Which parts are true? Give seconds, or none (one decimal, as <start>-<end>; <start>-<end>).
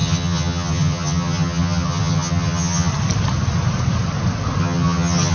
2.9-4.6